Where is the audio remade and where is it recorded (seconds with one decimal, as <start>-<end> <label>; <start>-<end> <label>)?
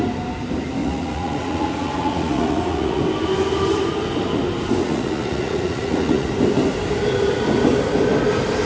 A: 0.0-0.8 recorded; 0.8-3.0 remade; 3.0-4.8 recorded; 4.8-6.3 remade; 6.3-8.7 recorded